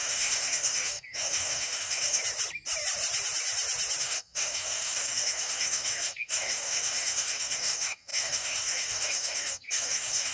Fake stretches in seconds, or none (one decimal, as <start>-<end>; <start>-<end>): 0.0-2.2; 4.0-10.3